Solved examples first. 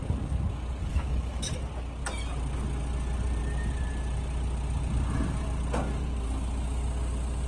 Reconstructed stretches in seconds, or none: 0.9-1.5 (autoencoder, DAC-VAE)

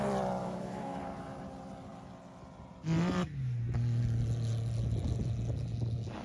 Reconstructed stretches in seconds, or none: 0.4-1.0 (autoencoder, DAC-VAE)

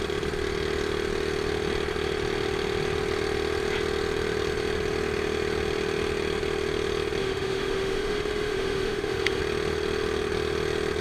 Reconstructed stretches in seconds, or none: 7.2-9.4 (autoencoder, DAC-VAE)

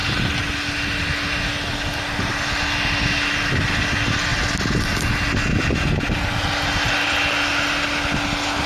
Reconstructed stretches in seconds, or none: none

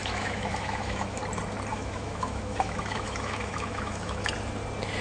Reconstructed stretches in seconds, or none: 0.0-1.2 (autoencoder, DAC-VAE); 1.7-4.3

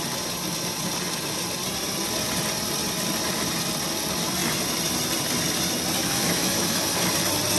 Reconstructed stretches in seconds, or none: 6.0-7.0 (autoencoder, DAC-VAE)